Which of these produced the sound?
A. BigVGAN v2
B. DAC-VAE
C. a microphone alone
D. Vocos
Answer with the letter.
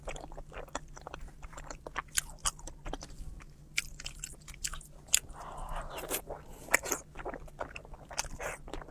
C